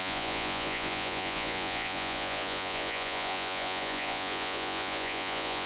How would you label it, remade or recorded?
remade